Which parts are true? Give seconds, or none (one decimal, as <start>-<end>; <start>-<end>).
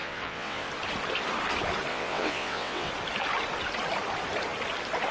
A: 0.7-1.9; 2.9-5.1